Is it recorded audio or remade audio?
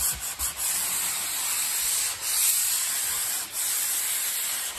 recorded